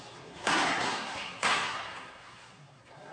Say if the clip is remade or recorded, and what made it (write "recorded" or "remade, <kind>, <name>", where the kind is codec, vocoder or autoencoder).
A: remade, codec, SNAC